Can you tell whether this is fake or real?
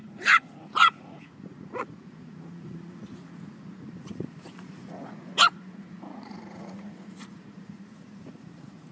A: fake